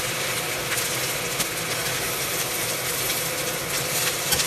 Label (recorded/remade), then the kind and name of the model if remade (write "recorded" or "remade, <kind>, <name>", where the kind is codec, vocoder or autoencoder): recorded